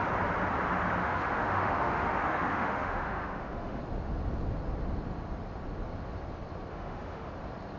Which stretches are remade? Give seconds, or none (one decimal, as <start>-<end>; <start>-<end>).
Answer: 1.0-3.8; 6.7-7.3